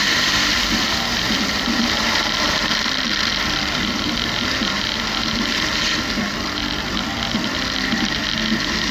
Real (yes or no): yes